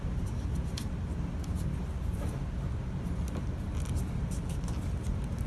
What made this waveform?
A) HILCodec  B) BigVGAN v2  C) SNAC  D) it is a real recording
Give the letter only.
D